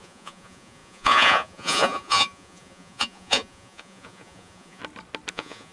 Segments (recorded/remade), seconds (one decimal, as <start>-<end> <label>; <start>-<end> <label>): 0.0-4.8 remade; 4.8-5.3 recorded; 5.3-5.7 remade

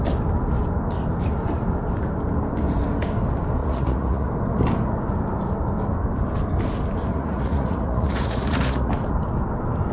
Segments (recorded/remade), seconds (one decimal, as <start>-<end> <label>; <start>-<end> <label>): 0.0-3.6 recorded; 3.6-4.3 remade; 4.3-7.1 recorded; 7.1-8.9 remade; 8.9-9.9 recorded